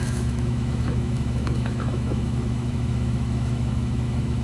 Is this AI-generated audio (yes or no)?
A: yes